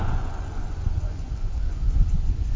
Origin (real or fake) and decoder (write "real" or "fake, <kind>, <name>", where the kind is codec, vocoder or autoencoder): fake, vocoder, Vocos